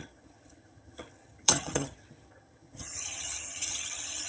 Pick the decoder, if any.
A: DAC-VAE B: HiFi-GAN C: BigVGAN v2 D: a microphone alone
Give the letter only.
B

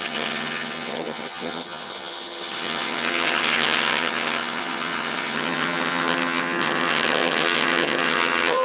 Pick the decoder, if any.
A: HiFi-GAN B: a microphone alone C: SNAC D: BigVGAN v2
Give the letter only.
A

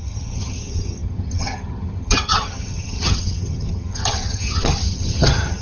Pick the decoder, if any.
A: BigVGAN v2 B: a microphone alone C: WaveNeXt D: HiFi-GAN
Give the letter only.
D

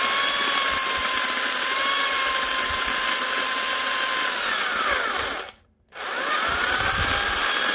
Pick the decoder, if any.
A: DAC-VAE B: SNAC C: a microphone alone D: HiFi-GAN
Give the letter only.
C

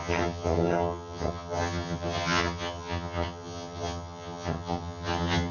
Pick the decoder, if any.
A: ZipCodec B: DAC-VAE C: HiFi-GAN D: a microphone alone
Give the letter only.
C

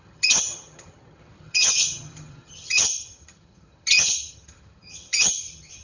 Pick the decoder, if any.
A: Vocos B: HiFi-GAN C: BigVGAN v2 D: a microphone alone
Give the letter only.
B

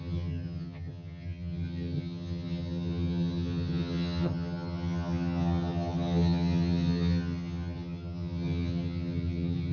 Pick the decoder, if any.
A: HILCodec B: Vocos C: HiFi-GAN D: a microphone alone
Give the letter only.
C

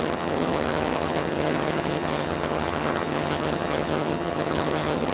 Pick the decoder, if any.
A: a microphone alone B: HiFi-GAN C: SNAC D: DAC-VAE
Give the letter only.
B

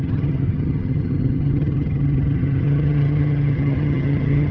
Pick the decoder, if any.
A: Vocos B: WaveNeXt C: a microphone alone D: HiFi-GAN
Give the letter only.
D